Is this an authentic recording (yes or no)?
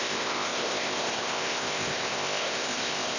no